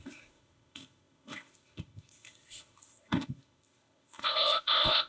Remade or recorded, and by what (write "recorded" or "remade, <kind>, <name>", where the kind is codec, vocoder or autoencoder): remade, codec, ZipCodec